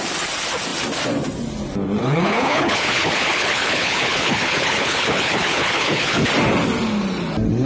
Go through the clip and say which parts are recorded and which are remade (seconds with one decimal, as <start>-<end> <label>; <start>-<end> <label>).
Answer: 0.0-2.0 recorded; 2.0-6.3 remade; 6.3-7.7 recorded